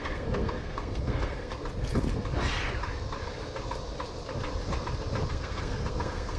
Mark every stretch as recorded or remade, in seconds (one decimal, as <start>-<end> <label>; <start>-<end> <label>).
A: 0.0-1.5 remade; 1.5-5.3 recorded; 5.3-6.4 remade